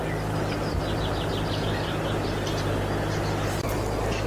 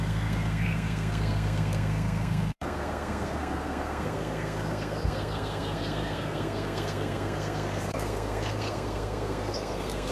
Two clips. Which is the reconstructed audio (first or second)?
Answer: second